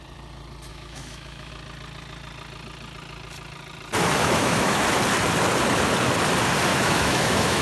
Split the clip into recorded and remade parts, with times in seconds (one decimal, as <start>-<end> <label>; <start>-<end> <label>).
0.0-0.7 recorded; 0.7-1.5 remade; 1.5-4.2 recorded; 4.2-4.8 remade; 4.8-6.7 recorded; 6.7-7.6 remade